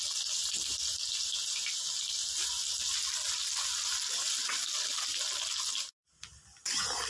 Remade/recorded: recorded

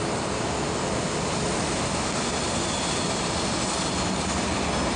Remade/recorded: recorded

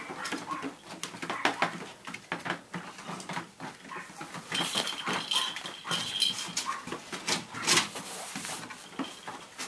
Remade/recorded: recorded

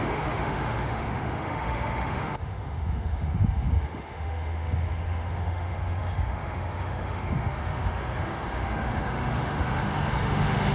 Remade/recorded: remade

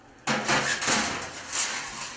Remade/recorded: recorded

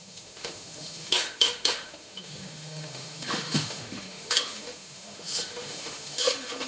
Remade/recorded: remade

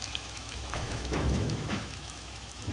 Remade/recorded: remade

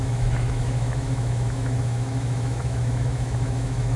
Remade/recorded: remade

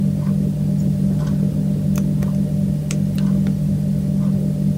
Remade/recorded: recorded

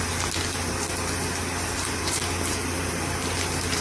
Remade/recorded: recorded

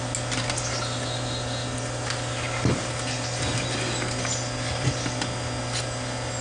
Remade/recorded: recorded